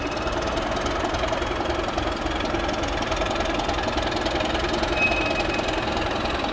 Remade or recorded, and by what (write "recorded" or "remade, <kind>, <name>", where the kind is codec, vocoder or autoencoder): recorded